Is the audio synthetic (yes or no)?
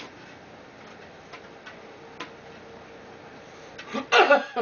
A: no